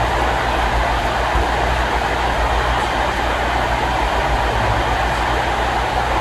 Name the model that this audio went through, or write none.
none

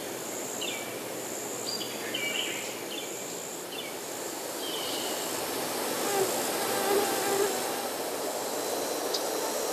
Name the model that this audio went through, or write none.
none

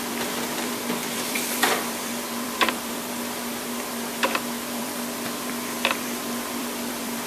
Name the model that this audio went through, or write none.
vocoder, BigVGAN v2